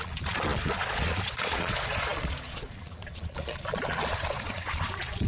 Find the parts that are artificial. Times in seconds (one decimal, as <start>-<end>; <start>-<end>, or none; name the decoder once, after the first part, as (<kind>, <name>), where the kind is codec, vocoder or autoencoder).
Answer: 0.0-5.3 (vocoder, Vocos)